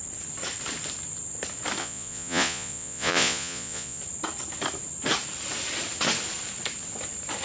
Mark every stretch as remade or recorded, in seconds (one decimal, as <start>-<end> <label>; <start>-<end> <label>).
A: 0.0-1.8 recorded; 1.8-4.0 remade; 4.0-7.4 recorded